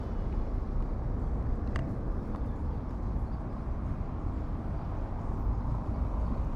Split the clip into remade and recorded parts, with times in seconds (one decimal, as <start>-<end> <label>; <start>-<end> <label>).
0.0-6.6 recorded